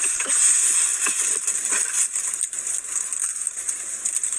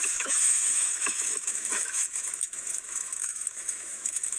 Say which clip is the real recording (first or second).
first